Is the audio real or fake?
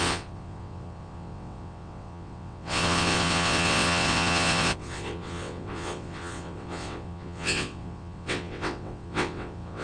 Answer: fake